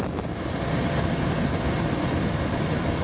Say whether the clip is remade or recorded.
recorded